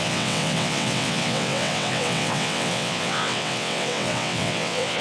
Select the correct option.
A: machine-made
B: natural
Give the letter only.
A